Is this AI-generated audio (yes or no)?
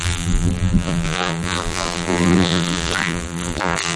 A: yes